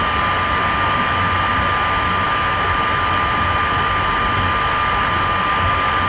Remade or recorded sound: recorded